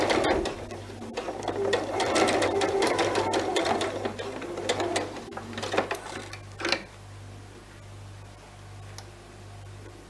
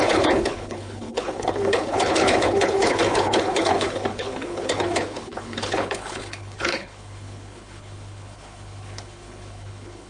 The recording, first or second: first